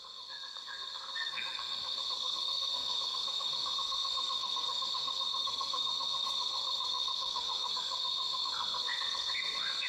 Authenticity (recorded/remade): remade